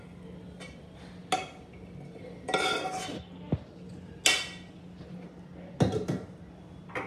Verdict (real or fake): real